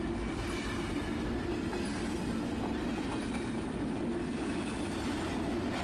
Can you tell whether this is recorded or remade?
recorded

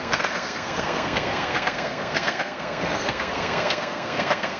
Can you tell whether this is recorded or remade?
remade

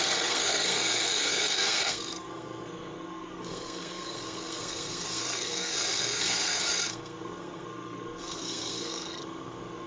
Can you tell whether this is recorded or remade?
remade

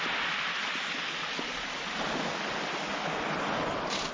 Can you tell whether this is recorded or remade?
recorded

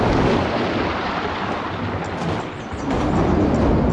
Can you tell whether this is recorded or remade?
recorded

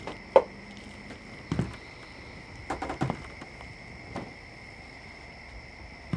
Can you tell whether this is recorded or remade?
recorded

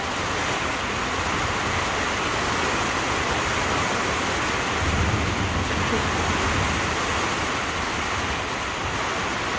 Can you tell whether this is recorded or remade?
recorded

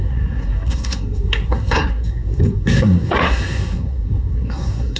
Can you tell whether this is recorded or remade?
remade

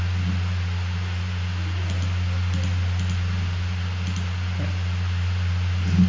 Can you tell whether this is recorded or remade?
recorded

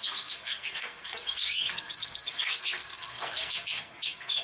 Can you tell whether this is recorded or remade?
remade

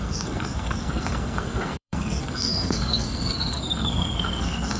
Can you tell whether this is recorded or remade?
remade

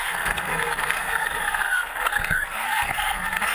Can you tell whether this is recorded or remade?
remade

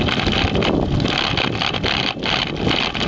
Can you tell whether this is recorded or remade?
recorded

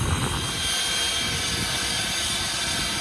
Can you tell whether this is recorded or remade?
recorded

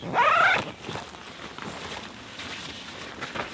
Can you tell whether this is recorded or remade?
recorded